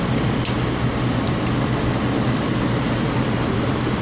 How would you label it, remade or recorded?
remade